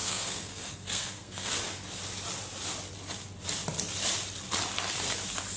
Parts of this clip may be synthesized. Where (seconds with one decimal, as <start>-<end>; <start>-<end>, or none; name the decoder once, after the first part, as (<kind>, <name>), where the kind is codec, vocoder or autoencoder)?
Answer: 0.0-1.6 (codec, SNAC)